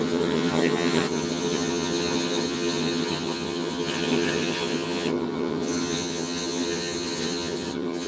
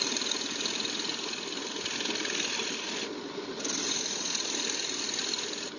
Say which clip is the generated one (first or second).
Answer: first